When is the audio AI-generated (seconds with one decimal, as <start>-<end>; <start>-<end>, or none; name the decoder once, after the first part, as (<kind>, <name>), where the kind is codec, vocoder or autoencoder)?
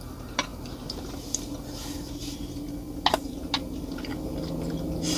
none